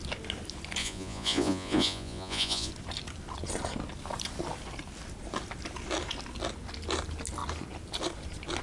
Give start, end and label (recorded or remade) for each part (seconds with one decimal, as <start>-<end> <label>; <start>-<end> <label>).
0.0-0.8 recorded; 0.8-2.7 remade; 2.7-8.6 recorded